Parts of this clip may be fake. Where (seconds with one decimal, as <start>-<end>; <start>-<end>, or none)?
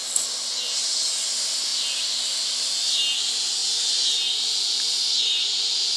none